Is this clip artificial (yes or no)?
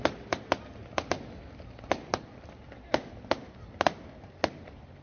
no